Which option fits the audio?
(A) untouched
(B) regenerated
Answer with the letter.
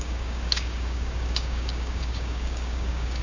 B